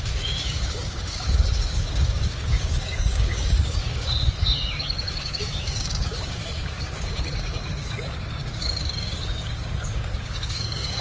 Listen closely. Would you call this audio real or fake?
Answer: fake